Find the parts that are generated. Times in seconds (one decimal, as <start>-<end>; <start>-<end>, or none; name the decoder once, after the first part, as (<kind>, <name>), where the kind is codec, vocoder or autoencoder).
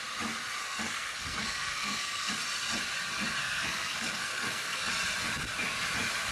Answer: 0.6-2.3 (codec, SNAC); 3.4-4.9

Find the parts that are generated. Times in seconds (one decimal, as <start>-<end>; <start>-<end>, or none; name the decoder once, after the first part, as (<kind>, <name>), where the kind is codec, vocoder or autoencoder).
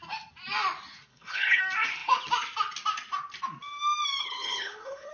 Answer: 1.1-1.6 (codec, HILCodec); 4.2-5.1